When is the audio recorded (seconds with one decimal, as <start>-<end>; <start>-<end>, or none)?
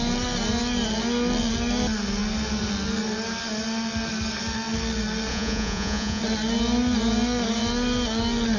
0.0-5.3; 6.2-8.6